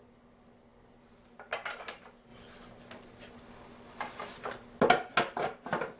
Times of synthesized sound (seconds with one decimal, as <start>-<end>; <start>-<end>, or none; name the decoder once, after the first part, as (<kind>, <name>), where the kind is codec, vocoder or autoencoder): none